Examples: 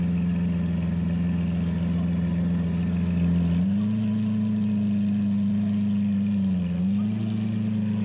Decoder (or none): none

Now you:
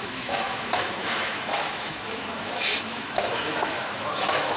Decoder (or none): autoencoder, DAC-VAE